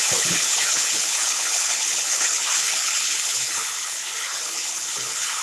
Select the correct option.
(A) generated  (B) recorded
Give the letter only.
A